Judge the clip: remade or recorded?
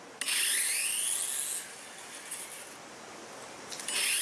recorded